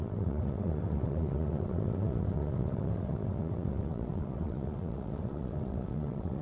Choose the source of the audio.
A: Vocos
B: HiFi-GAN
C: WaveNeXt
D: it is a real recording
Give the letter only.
C